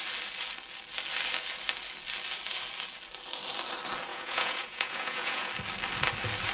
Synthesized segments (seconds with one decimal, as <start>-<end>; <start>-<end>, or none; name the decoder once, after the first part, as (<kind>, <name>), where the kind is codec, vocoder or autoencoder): 4.1-5.5 (vocoder, Vocos)